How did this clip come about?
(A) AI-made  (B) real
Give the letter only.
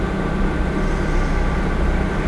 B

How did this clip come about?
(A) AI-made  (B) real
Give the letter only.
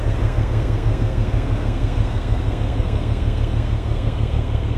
A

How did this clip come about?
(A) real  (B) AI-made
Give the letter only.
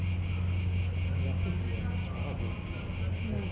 A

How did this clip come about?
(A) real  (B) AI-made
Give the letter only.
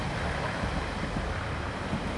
A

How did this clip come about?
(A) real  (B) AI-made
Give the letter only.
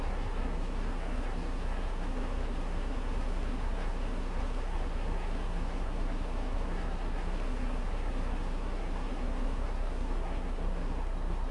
B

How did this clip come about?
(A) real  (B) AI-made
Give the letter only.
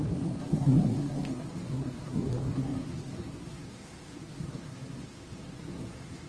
B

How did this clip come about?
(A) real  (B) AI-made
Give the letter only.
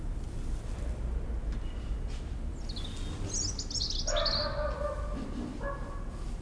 A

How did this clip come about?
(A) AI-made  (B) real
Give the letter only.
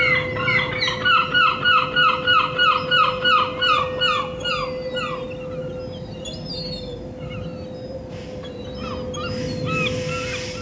B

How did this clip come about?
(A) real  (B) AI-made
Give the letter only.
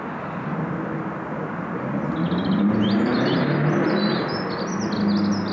A